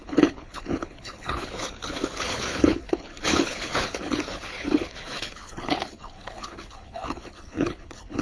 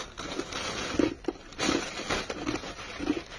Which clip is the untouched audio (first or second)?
second